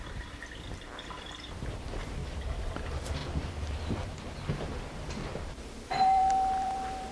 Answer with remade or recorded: remade